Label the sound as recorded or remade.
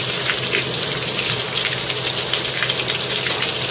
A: recorded